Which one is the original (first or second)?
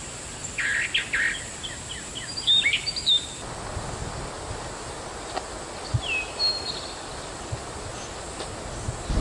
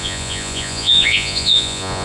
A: first